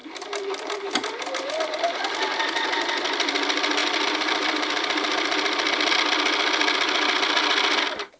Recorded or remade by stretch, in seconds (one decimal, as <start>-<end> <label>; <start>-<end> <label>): 0.0-8.2 recorded

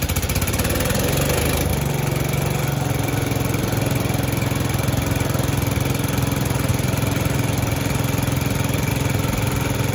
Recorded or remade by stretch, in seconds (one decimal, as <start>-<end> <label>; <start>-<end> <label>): 0.0-9.9 recorded

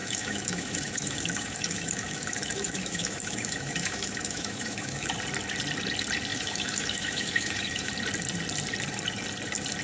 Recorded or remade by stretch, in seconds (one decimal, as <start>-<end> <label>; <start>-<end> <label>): 0.0-5.1 remade; 5.1-6.3 recorded; 6.3-7.9 remade; 7.9-9.8 recorded

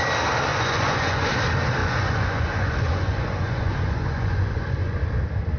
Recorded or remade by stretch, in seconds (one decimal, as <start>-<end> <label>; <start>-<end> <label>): 0.0-0.5 recorded; 0.5-1.3 remade; 1.3-1.8 recorded; 1.8-5.0 remade; 5.0-5.6 recorded

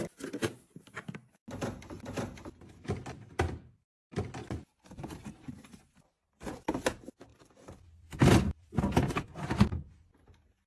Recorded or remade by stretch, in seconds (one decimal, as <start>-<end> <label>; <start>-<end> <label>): 0.0-10.7 recorded